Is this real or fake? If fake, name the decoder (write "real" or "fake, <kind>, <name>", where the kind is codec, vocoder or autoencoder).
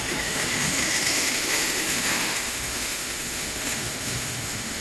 fake, autoencoder, DAC-VAE